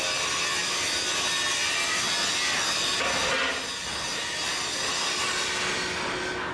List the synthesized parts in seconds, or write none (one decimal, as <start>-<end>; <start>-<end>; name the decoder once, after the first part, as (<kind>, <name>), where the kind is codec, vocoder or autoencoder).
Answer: none